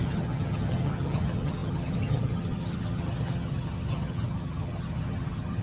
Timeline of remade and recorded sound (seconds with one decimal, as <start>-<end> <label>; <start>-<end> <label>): 0.0-5.6 remade